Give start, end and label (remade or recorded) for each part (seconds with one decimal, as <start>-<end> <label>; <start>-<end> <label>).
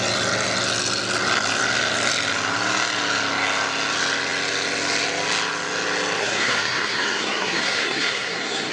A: 0.0-6.2 recorded; 6.2-8.7 remade